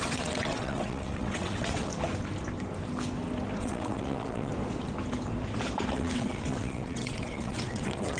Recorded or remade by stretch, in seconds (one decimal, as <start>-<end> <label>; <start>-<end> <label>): 0.0-1.9 remade; 1.9-3.6 recorded; 3.6-4.5 remade; 4.5-5.9 recorded; 5.9-8.2 remade